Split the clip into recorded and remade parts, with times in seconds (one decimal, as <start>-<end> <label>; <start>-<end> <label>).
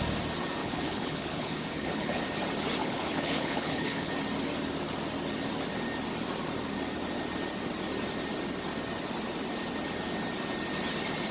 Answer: 0.0-0.6 recorded; 0.6-2.2 remade; 2.2-2.8 recorded; 2.8-4.1 remade; 4.1-11.3 recorded